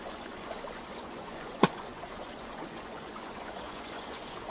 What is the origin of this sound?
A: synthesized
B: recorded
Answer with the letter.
A